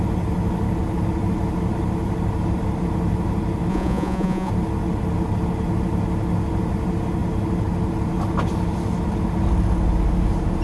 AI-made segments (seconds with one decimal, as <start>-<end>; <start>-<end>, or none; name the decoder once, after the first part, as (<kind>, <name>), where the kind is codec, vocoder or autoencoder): 3.7-4.5 (vocoder, Vocos)